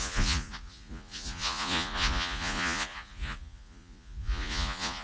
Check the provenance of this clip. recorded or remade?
remade